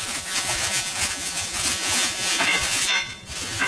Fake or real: fake